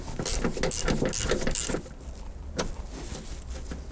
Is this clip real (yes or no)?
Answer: yes